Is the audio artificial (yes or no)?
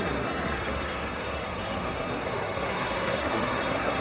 yes